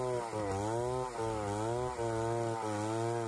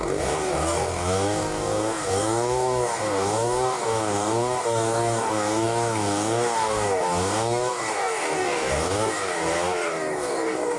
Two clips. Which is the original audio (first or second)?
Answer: first